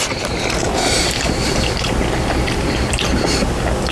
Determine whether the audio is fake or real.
real